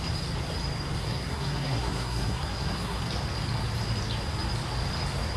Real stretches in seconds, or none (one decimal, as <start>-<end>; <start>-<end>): 0.0-1.0; 3.0-5.4